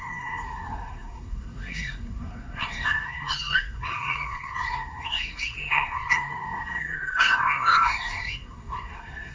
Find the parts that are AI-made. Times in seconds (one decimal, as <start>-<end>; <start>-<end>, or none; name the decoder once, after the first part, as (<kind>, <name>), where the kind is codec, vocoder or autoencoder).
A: 0.0-9.3 (codec, SNAC)